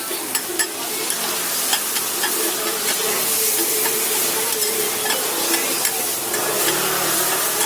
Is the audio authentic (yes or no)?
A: yes